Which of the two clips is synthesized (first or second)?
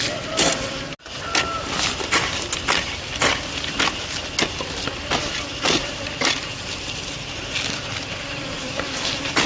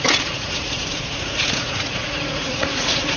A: second